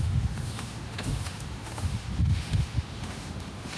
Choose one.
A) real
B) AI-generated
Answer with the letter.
B